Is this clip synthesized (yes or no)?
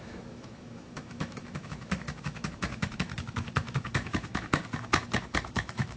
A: yes